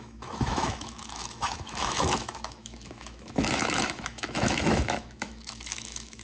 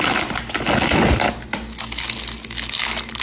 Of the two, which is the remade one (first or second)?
first